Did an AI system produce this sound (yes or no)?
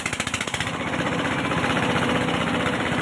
no